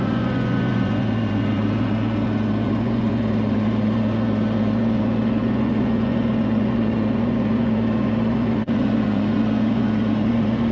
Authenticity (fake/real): fake